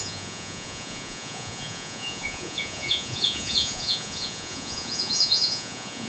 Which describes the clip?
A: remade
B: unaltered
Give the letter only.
A